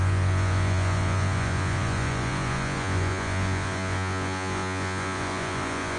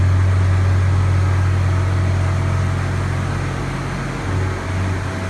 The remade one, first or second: first